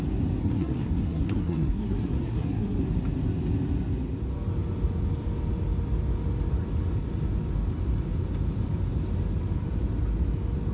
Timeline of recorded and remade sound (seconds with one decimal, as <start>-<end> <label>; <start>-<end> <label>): 0.0-0.4 recorded; 0.4-2.8 remade; 2.8-10.7 recorded

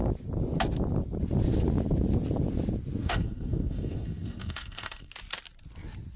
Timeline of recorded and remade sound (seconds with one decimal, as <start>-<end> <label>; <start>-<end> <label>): 0.0-3.0 recorded; 3.0-5.1 remade; 5.1-6.2 recorded